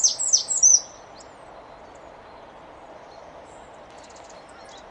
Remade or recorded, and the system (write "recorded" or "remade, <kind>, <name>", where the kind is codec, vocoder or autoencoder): recorded